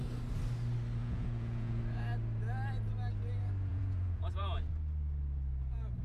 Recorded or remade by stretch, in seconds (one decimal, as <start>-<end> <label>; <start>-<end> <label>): 0.0-1.0 recorded; 1.0-1.8 remade; 1.8-3.7 recorded; 3.7-4.7 remade; 4.7-6.0 recorded